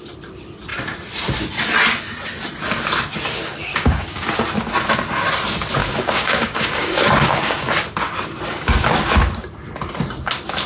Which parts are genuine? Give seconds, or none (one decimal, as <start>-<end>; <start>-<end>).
0.0-3.7; 4.3-5.8; 7.7-10.7